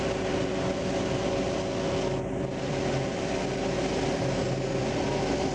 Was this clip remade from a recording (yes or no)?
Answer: no